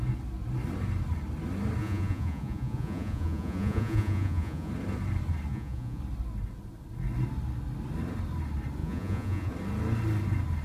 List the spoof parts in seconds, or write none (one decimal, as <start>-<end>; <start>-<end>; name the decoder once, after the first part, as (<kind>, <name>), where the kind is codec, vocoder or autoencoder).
1.8-4.7 (vocoder, Vocos); 5.5-6.0; 8.8-9.5